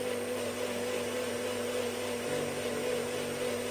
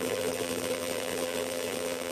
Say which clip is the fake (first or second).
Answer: second